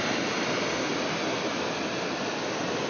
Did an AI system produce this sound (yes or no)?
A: no